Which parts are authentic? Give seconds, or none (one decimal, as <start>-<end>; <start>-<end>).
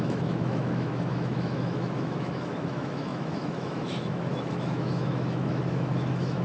none